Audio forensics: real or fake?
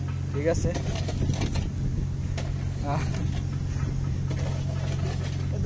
real